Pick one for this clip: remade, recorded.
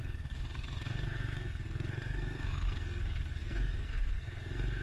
remade